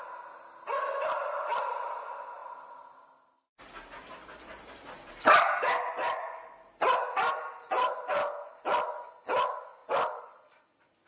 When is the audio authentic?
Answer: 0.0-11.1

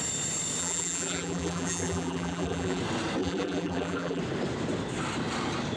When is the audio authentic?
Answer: 0.0-0.6; 2.8-3.2; 4.2-5.8

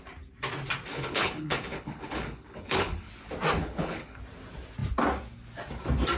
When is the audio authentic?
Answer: 0.0-0.9; 3.1-3.6; 4.2-6.2

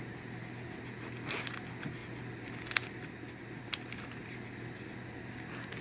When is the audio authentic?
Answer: 0.0-5.8

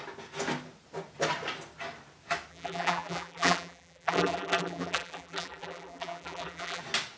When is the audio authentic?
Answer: 0.0-2.5; 6.8-7.2

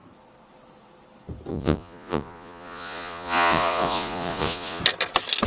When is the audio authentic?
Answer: 0.0-1.5; 4.8-5.5

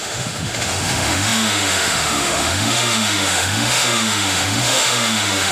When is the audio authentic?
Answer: none

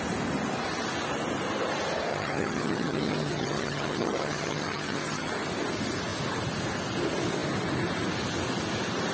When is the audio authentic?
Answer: 0.0-2.1; 5.3-9.1